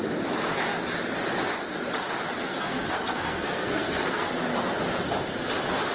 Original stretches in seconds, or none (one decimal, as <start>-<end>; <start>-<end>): 0.0-2.5; 4.3-5.9